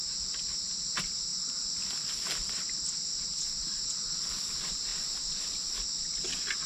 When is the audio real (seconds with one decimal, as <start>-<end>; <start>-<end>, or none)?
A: 0.0-6.7